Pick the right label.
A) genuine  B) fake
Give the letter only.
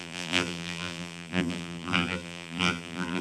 B